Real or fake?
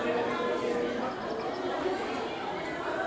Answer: real